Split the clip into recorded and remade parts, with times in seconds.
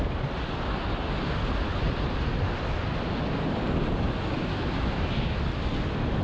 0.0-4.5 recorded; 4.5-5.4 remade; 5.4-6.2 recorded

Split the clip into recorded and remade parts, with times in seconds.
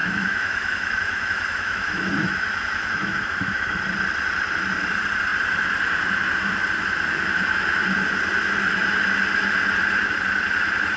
0.0-3.8 remade; 3.8-11.0 recorded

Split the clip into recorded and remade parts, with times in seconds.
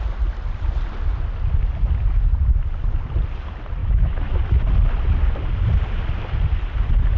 0.0-3.8 recorded; 3.8-4.3 remade; 4.3-7.2 recorded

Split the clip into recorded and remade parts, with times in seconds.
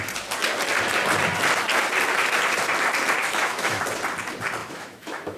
0.0-3.2 recorded; 3.2-3.8 remade; 3.8-4.6 recorded; 4.6-5.4 remade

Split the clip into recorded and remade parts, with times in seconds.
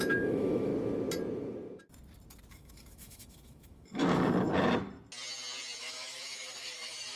0.0-0.7 remade; 0.7-2.5 recorded; 2.5-4.0 remade; 4.0-5.8 recorded; 5.8-7.2 remade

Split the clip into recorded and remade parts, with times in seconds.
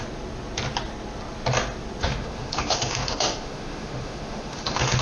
0.0-2.0 recorded; 2.0-5.0 remade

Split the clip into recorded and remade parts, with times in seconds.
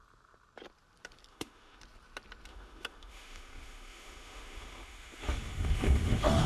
0.0-1.3 recorded; 1.3-1.8 remade; 1.8-2.5 recorded; 2.5-6.5 remade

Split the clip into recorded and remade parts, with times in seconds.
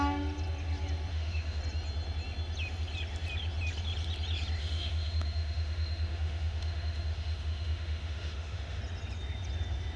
0.0-1.1 recorded; 1.1-1.6 remade; 1.6-4.6 recorded; 4.6-8.8 remade; 8.8-10.0 recorded